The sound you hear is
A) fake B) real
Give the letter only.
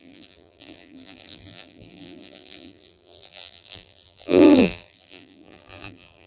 A